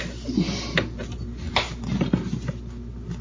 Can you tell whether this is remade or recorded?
recorded